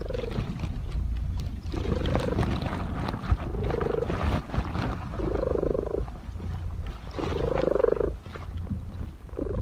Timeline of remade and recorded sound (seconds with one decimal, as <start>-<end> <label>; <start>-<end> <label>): 0.0-9.6 recorded